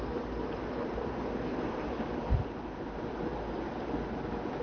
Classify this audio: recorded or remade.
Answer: recorded